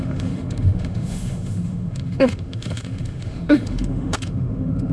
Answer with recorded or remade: remade